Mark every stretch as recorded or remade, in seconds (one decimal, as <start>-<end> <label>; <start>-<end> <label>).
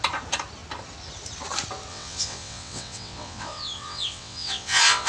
0.0-1.9 recorded; 1.9-5.1 remade